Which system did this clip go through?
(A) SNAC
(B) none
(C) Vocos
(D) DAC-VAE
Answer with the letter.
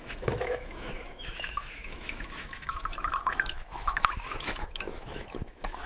D